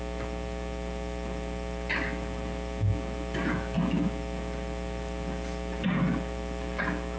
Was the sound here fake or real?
real